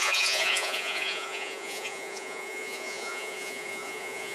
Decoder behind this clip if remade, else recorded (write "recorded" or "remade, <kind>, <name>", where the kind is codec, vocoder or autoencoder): remade, vocoder, Vocos